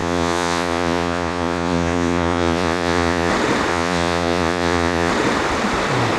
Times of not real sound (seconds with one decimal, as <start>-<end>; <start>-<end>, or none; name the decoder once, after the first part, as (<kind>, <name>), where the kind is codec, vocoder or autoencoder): 0.0-3.3 (vocoder, Vocos); 3.7-5.1